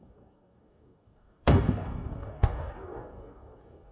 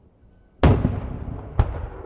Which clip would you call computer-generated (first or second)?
first